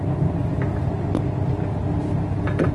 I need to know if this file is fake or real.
real